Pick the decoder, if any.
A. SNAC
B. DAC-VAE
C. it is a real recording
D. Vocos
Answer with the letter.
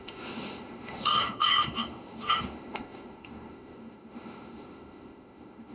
B